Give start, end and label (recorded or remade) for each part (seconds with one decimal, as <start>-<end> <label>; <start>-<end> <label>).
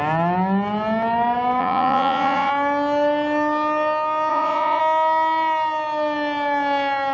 0.0-1.6 recorded; 1.6-2.5 remade; 2.5-4.3 recorded; 4.3-4.8 remade; 4.8-7.1 recorded